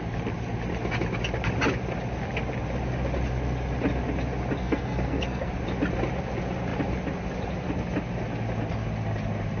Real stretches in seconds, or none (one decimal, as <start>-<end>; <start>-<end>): 0.0-4.6; 5.5-9.6